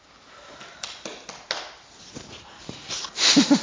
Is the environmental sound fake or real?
real